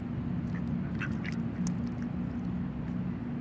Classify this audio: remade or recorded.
recorded